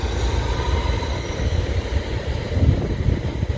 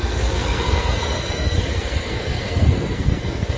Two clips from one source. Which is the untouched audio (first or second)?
first